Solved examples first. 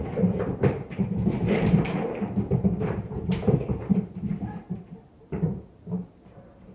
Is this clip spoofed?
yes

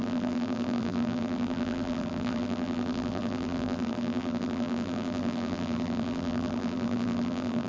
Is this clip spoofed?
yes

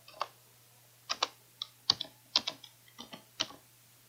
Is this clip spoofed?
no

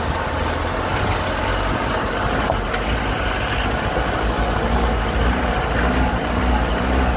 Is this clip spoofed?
no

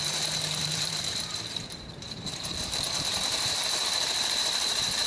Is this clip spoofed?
yes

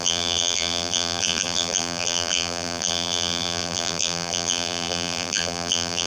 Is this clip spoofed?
yes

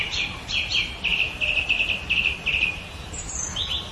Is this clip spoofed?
yes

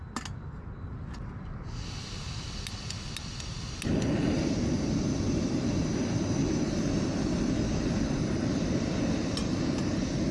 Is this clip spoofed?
no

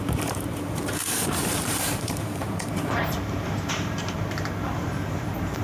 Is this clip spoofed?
yes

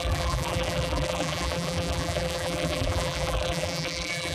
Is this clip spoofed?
yes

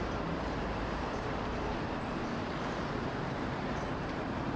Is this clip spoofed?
yes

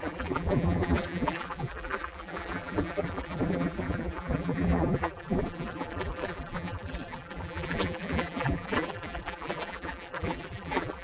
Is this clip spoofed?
yes